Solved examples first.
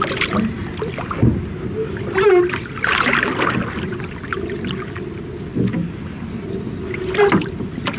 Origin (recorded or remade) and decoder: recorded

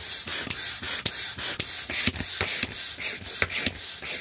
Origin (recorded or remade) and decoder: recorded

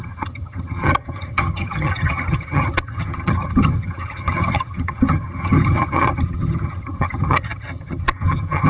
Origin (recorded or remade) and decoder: remade, vocoder, HiFi-GAN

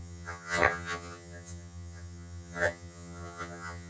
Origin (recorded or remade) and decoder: remade, vocoder, HiFi-GAN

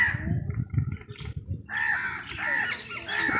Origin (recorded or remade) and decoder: recorded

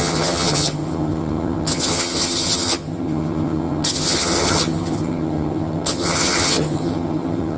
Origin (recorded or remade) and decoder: remade, vocoder, HiFi-GAN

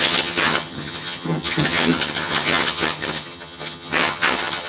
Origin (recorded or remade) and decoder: remade, vocoder, HiFi-GAN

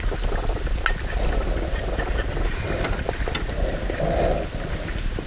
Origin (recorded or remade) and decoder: recorded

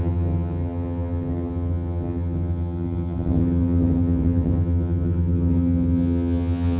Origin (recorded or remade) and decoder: remade, vocoder, HiFi-GAN